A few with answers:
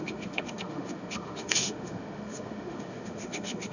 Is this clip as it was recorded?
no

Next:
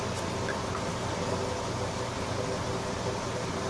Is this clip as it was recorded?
yes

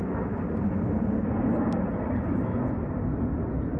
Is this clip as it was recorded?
yes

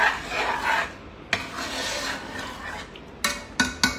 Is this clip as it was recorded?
yes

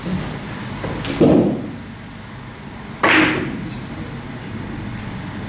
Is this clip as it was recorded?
yes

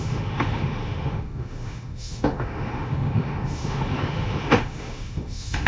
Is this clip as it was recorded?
no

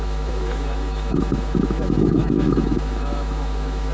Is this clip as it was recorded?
no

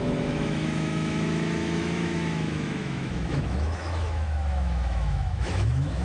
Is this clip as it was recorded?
no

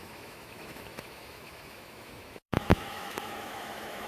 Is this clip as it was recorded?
no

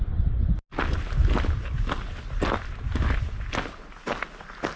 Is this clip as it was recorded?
yes